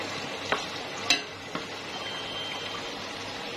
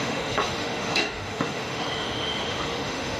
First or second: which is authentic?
first